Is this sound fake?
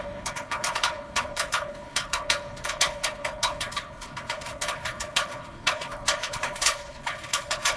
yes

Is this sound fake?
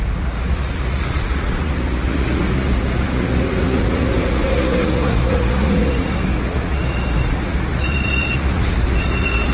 yes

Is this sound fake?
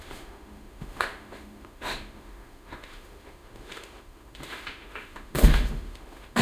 yes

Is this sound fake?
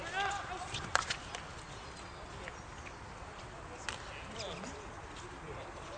no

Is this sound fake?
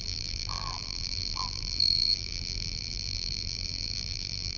yes